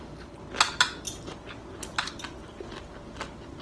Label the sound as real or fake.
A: real